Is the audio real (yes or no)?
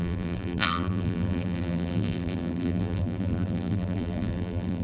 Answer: no